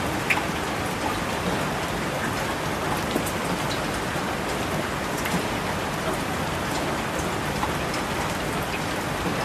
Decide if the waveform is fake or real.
real